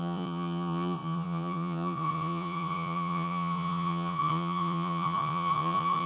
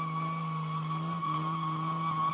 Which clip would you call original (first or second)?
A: second